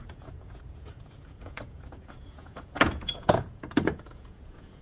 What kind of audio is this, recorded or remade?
remade